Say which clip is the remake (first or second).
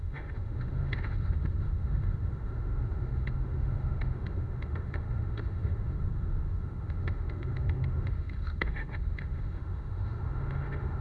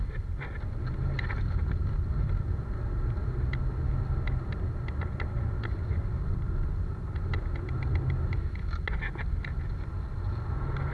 first